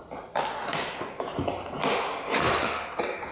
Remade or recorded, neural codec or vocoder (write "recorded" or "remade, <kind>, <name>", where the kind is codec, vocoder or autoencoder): recorded